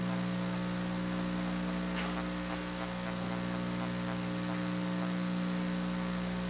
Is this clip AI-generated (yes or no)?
no